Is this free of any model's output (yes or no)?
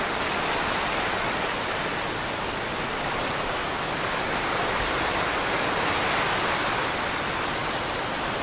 yes